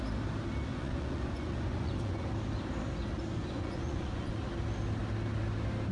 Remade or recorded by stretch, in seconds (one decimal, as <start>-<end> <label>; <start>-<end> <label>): 0.0-0.7 recorded; 0.7-2.3 remade; 2.3-3.3 recorded; 3.3-4.3 remade; 4.3-5.9 recorded